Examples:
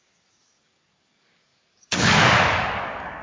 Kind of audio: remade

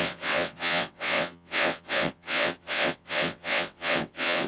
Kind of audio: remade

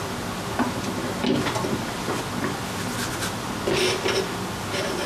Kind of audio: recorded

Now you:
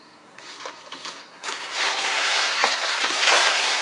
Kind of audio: remade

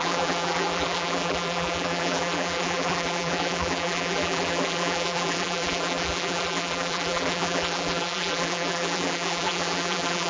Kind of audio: remade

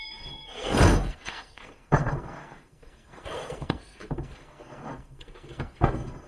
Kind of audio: remade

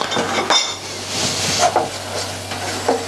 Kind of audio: recorded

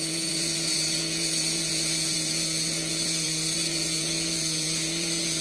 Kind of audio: remade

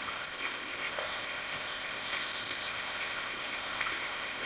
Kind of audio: remade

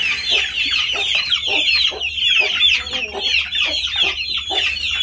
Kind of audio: recorded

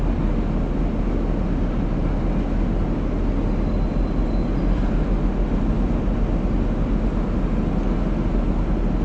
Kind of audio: recorded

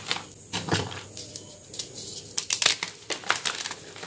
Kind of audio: recorded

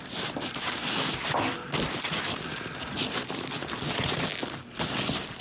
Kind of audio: recorded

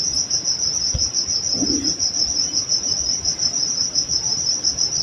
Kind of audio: recorded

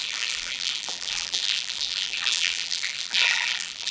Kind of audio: remade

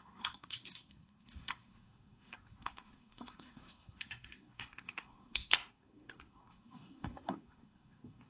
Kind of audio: remade